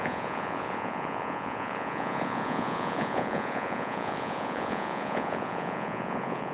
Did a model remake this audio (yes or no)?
yes